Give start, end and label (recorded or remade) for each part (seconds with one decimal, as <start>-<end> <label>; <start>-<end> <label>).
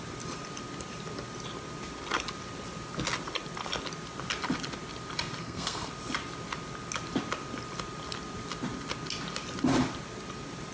0.0-5.4 recorded; 5.4-5.9 remade; 5.9-10.7 recorded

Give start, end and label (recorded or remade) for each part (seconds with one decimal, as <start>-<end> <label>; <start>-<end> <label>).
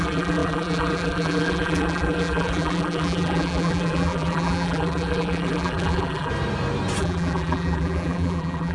0.0-6.3 remade; 6.3-7.0 recorded; 7.0-8.7 remade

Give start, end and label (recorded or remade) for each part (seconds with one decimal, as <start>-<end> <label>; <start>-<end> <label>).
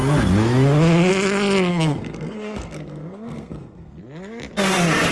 0.0-1.7 recorded; 1.7-4.0 remade; 4.0-5.1 recorded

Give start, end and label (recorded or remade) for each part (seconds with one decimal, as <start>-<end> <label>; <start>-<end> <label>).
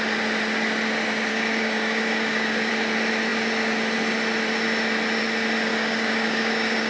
0.0-1.3 recorded; 1.3-2.7 remade; 2.7-5.7 recorded; 5.7-6.9 remade